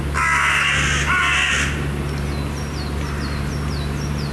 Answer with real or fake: real